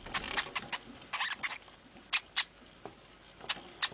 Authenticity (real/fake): real